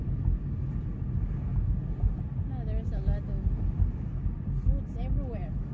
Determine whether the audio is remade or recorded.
recorded